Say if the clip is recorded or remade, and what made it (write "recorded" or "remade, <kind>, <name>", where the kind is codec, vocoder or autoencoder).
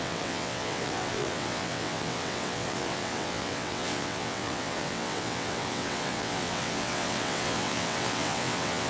remade, vocoder, WaveNeXt